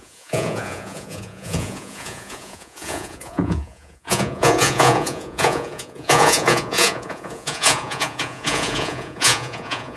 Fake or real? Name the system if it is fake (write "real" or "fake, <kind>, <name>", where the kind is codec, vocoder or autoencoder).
fake, vocoder, Vocos